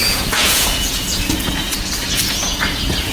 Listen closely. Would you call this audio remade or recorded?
remade